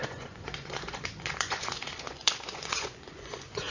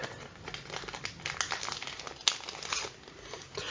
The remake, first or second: first